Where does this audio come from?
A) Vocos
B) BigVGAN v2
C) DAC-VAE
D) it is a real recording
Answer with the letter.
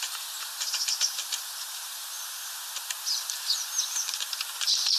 B